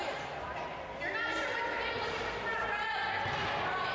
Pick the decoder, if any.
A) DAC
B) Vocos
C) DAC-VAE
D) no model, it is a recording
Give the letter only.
D